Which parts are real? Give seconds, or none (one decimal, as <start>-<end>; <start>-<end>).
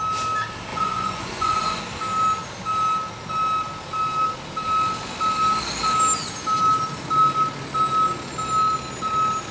0.0-0.7; 1.8-9.5